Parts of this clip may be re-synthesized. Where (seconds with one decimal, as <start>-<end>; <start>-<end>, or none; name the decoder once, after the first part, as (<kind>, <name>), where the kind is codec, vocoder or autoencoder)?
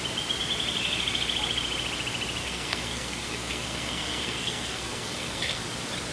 2.4-5.6 (codec, SNAC)